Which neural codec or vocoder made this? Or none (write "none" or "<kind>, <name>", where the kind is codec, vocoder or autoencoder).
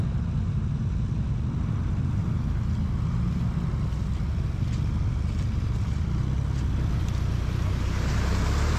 none